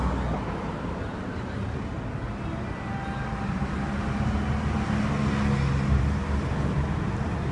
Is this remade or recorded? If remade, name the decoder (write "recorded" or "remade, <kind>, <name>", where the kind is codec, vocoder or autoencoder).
recorded